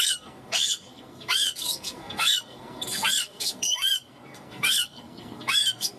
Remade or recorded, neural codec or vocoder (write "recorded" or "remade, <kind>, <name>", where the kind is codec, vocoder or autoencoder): remade, codec, SNAC